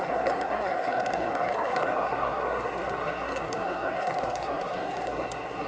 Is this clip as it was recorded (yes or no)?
no